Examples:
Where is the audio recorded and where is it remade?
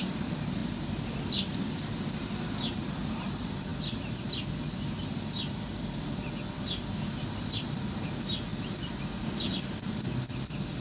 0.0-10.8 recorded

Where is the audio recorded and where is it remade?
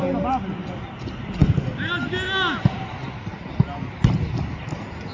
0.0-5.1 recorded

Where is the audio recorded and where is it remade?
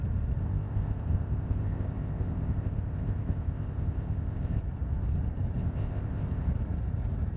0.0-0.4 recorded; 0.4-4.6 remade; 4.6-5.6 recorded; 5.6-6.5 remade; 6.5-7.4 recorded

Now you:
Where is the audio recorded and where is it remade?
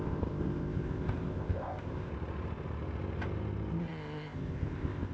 0.0-2.1 remade; 2.1-3.8 recorded; 3.8-5.1 remade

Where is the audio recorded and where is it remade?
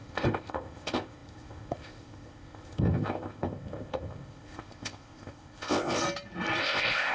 0.0-6.0 remade; 6.0-6.6 recorded; 6.6-7.1 remade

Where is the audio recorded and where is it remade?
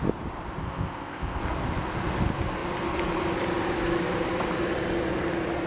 0.0-0.6 recorded; 0.6-1.4 remade; 1.4-5.7 recorded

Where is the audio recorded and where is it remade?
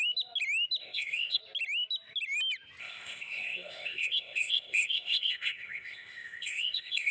0.0-0.8 recorded; 0.8-1.4 remade; 1.4-2.8 recorded; 2.8-7.1 remade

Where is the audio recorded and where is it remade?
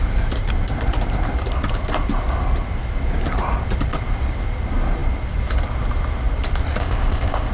0.0-6.8 recorded; 6.8-7.5 remade